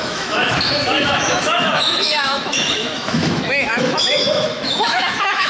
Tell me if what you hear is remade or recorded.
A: remade